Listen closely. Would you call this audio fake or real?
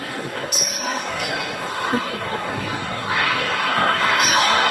fake